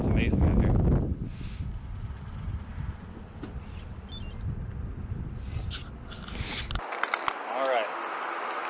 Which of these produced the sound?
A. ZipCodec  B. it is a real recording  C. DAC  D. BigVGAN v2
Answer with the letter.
B